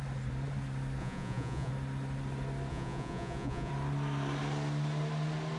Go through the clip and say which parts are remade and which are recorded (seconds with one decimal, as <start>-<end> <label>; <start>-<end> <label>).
0.0-1.0 recorded; 1.0-1.7 remade; 1.7-2.7 recorded; 2.7-3.7 remade; 3.7-5.6 recorded